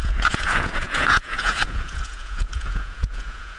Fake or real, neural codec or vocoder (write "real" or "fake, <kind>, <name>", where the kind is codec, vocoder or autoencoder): fake, vocoder, Vocos